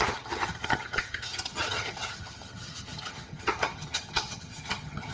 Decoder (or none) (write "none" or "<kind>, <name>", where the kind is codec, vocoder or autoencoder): vocoder, HiFi-GAN